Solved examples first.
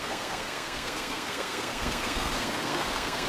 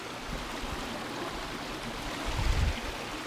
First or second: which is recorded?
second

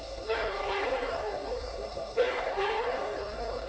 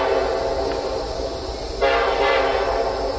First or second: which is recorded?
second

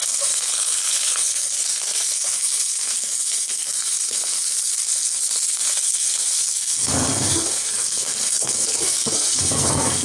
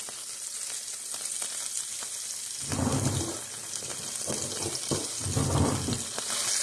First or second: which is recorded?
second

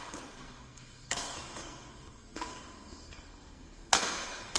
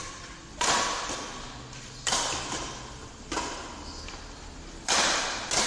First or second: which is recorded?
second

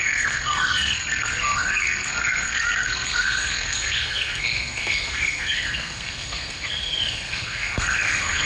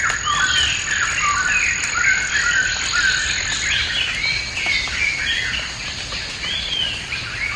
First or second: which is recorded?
second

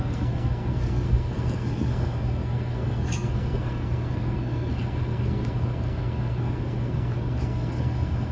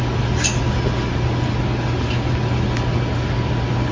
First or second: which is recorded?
second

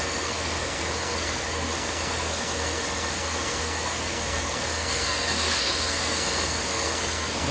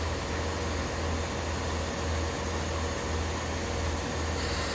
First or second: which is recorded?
second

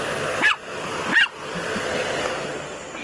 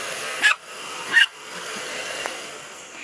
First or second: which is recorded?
first